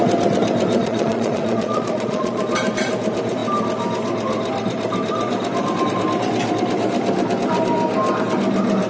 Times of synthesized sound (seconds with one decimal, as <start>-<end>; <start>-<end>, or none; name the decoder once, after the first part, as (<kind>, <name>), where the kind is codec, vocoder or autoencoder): 0.8-2.4 (vocoder, Vocos)